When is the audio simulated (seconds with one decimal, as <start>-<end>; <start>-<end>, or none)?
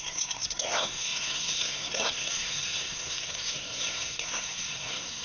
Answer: 0.0-5.2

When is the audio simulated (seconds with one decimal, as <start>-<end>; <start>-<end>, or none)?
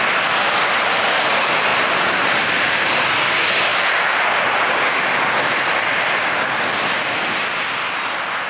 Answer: none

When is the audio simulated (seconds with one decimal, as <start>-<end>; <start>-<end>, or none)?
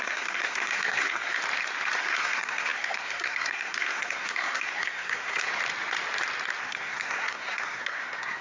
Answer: 0.0-1.4; 2.0-5.5; 6.6-8.4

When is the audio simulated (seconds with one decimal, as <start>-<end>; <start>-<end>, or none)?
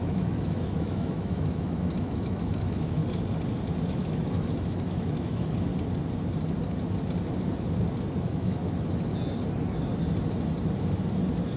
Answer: 0.0-3.0; 3.9-5.7; 8.2-8.6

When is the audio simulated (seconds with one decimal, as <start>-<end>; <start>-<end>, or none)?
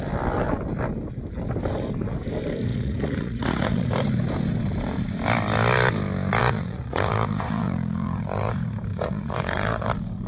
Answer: 2.7-3.9; 6.4-8.5; 8.9-9.9